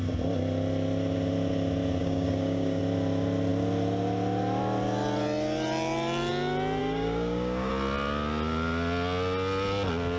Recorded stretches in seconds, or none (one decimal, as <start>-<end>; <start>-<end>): 0.0-2.0; 2.8-6.8; 7.7-10.2